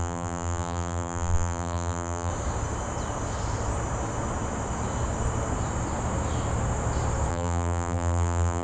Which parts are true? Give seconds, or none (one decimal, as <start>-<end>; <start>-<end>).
2.3-7.3